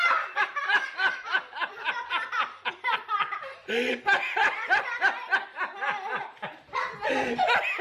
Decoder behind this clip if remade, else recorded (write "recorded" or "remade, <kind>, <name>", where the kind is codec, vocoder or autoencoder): remade, vocoder, BigVGAN v2